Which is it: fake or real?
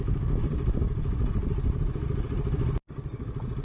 real